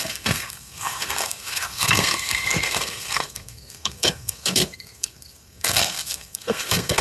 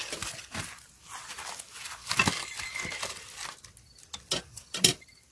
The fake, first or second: first